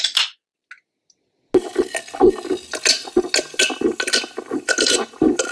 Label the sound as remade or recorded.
recorded